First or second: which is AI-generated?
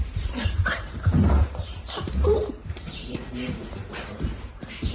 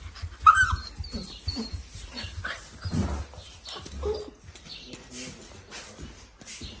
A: first